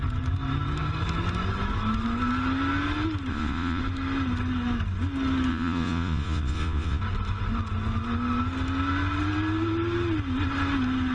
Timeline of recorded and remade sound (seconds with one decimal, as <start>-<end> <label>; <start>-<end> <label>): 0.0-3.3 recorded; 3.3-3.8 remade; 3.8-5.5 recorded; 5.5-7.0 remade; 7.0-11.1 recorded